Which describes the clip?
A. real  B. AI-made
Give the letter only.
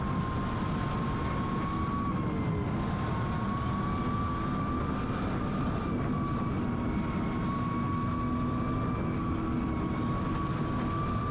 A